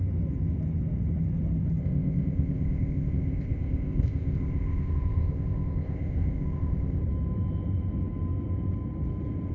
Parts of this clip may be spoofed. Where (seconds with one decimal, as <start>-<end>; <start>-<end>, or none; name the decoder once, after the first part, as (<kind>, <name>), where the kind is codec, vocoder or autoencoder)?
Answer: 1.8-7.0 (codec, ZipCodec)